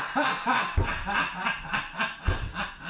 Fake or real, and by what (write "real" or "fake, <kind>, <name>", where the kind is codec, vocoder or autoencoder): real